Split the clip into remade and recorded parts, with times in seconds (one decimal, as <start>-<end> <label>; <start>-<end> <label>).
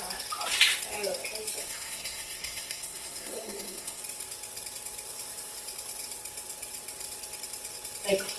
0.0-1.6 recorded; 1.6-4.0 remade; 4.0-8.4 recorded